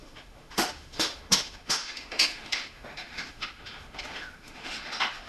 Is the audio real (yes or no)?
no